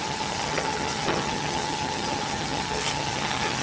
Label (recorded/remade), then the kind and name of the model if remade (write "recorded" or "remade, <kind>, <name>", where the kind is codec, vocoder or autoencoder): remade, vocoder, HiFi-GAN